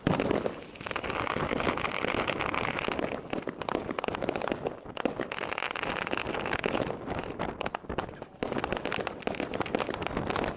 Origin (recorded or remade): recorded